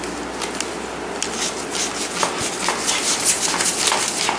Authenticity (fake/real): real